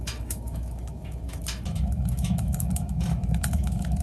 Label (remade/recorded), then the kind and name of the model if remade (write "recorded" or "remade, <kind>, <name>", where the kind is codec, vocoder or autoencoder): remade, autoencoder, DAC-VAE